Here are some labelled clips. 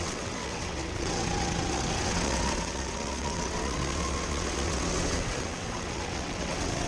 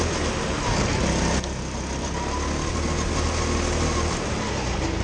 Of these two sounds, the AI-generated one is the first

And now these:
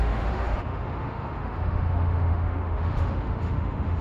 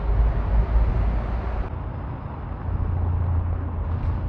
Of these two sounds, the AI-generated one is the first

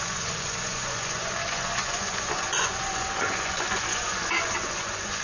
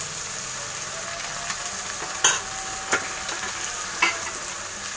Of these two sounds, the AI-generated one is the first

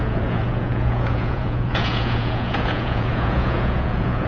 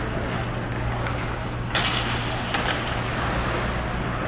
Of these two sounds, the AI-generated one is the first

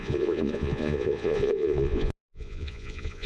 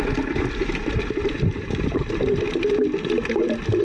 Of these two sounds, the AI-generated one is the first